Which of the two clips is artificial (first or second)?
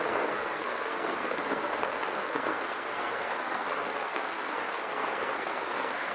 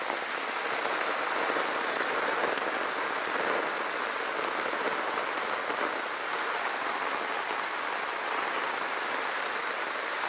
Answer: first